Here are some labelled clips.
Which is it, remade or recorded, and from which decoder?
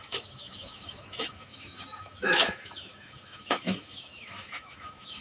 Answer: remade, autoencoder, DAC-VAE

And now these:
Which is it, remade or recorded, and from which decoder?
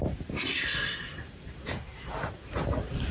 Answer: recorded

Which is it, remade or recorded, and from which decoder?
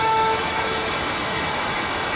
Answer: remade, autoencoder, DAC-VAE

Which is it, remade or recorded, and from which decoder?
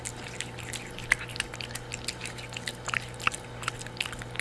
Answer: recorded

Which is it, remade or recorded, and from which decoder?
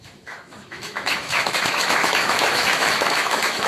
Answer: remade, autoencoder, DAC-VAE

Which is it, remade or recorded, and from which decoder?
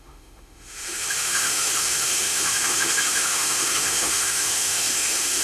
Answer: remade, autoencoder, DAC-VAE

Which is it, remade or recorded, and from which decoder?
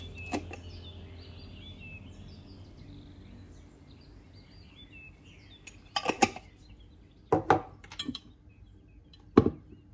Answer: recorded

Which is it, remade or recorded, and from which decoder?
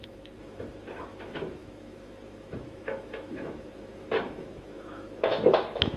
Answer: remade, autoencoder, DAC-VAE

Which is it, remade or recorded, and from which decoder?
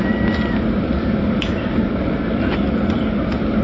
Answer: recorded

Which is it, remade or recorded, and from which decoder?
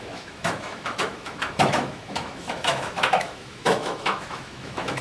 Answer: remade, autoencoder, DAC-VAE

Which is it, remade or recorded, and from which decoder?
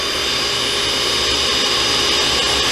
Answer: recorded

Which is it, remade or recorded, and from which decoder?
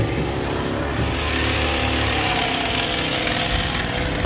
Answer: recorded